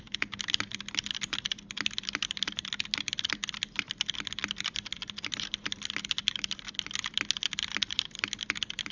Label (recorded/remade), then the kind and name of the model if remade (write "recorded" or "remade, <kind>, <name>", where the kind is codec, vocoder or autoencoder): recorded